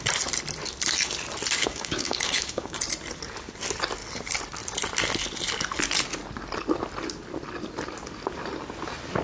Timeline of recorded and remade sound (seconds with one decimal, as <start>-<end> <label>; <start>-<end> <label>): 0.0-1.6 recorded; 1.6-2.8 remade; 2.8-9.2 recorded